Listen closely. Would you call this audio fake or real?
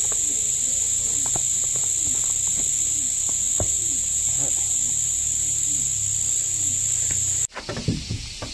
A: real